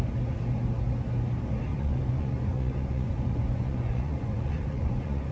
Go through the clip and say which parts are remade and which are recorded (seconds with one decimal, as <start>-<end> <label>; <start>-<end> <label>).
0.0-1.7 recorded; 1.7-5.3 remade